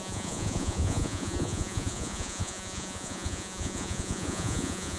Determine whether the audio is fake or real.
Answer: fake